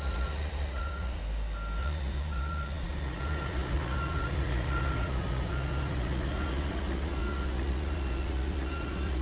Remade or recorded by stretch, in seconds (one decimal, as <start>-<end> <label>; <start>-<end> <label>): 0.0-1.2 remade; 1.2-1.8 recorded; 1.8-9.2 remade